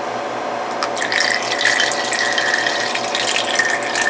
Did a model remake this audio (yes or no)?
no